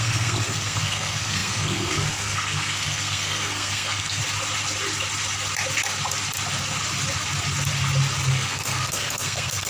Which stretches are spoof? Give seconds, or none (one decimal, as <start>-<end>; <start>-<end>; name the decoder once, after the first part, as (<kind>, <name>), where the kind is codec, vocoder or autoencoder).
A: 0.0-4.2 (codec, SNAC); 8.3-9.7